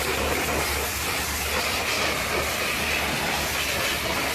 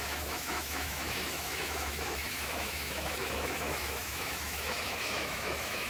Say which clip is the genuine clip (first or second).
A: first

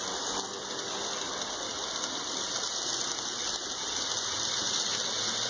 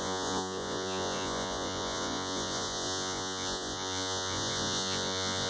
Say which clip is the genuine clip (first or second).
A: first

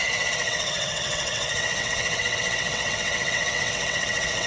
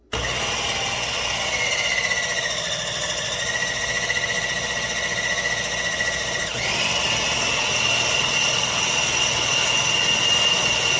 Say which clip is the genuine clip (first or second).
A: second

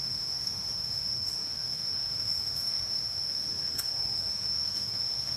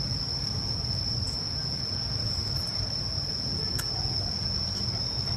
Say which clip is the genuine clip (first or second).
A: second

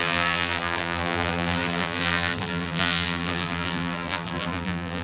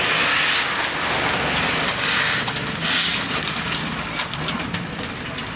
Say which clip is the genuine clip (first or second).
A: second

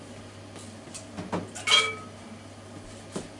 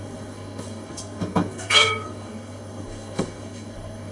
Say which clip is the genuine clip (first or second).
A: first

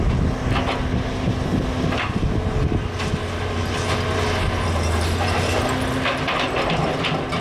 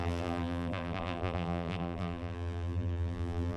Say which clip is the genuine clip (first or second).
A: first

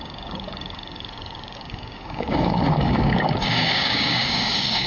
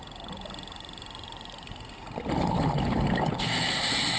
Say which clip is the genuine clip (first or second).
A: second